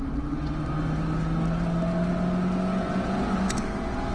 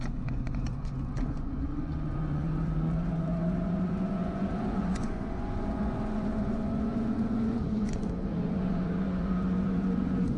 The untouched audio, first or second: first